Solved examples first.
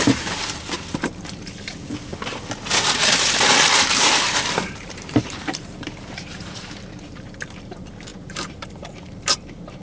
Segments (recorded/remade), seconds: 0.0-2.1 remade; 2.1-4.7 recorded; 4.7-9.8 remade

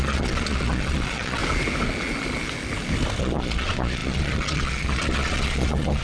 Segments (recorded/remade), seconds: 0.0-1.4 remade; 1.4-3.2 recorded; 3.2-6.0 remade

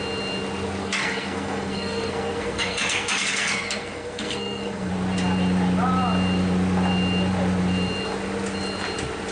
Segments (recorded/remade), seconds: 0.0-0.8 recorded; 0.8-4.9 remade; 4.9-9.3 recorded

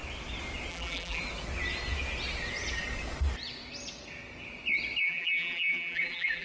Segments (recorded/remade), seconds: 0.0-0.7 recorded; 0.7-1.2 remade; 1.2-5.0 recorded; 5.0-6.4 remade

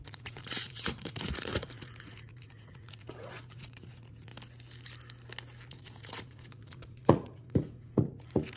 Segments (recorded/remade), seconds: 0.0-4.3 remade; 4.3-5.7 recorded; 5.7-8.6 remade

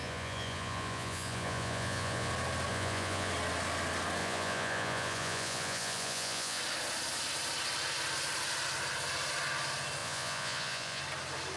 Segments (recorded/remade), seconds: 0.0-2.3 remade; 2.3-2.7 recorded; 2.7-3.3 remade; 3.3-4.2 recorded; 4.2-6.6 remade; 6.6-10.0 recorded; 10.0-11.0 remade; 11.0-11.6 recorded